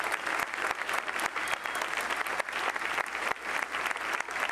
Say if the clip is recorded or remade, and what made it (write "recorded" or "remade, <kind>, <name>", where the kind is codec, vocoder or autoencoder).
recorded